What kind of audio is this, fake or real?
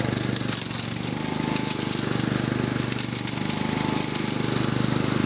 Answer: real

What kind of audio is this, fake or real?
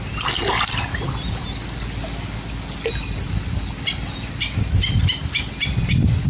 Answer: real